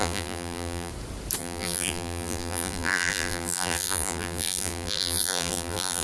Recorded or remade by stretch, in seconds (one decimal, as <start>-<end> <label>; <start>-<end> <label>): 0.0-0.9 remade; 0.9-1.4 recorded; 1.4-6.0 remade